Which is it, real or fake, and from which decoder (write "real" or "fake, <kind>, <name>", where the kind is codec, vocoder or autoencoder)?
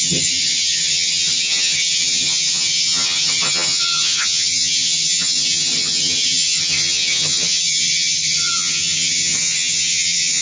fake, vocoder, HiFi-GAN